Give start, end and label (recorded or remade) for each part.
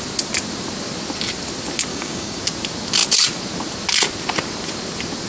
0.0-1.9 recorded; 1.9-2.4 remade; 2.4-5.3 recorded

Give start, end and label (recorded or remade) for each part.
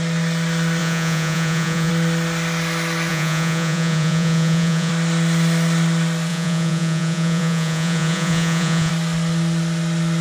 0.0-0.8 recorded; 0.8-1.9 remade; 1.9-3.1 recorded; 3.1-4.9 remade; 4.9-6.3 recorded; 6.3-8.9 remade; 8.9-10.2 recorded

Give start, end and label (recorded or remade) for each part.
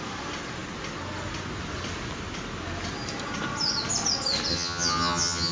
0.0-4.5 recorded; 4.5-5.5 remade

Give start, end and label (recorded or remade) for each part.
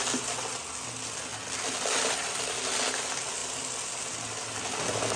0.0-5.2 recorded